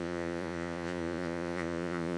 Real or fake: fake